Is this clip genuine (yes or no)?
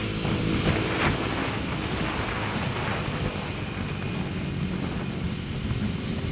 yes